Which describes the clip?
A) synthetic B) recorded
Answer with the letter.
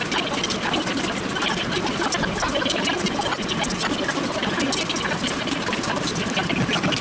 B